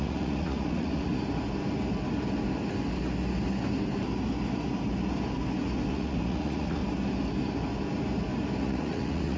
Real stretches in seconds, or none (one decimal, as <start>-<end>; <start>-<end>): 1.1-5.9; 6.8-8.6